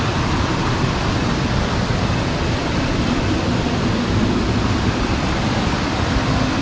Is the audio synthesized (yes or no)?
no